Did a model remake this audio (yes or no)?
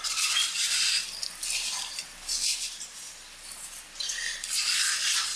no